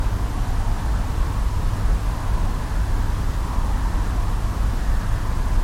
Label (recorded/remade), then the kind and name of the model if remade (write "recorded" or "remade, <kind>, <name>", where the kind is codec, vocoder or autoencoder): recorded